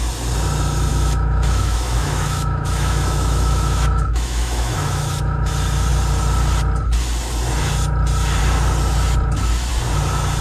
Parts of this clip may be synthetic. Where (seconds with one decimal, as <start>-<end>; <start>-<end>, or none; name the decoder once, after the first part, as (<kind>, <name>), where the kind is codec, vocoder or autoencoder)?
0.9-5.5 (autoencoder, DAC-VAE)